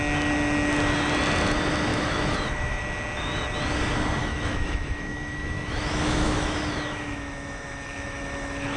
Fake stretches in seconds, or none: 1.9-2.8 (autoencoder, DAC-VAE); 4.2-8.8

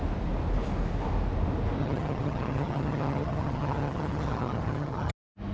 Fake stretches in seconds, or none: 1.8-5.1 (vocoder, HiFi-GAN)